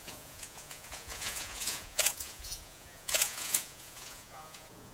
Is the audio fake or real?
fake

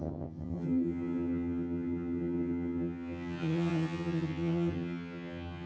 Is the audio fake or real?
fake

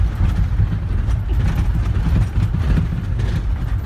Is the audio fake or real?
real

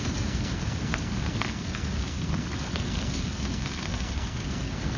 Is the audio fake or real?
fake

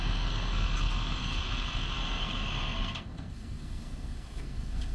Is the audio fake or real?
fake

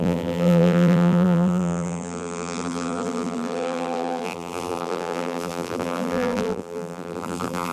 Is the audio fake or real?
fake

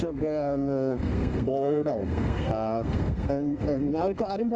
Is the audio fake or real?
fake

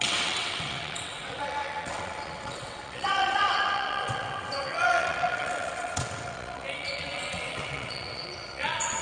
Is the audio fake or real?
fake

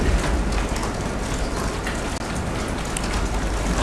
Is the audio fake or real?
real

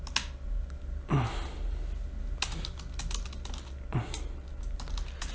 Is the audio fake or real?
real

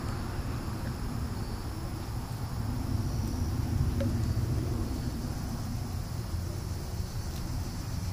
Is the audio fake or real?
real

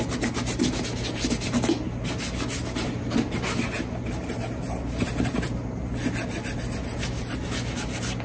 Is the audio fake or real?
real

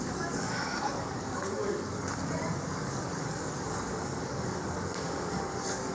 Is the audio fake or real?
fake